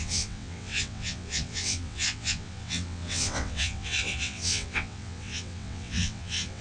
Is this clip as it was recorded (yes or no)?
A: no